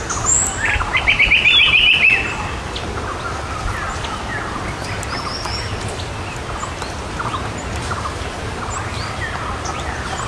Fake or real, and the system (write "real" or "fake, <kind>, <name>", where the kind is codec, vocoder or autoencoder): real